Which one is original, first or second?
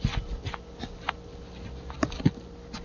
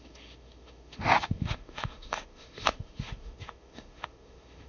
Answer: first